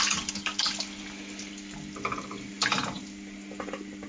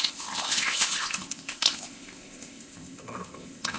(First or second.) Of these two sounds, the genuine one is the first